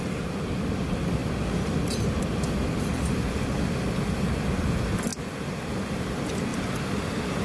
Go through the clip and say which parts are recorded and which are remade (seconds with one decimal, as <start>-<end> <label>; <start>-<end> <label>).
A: 0.0-7.4 recorded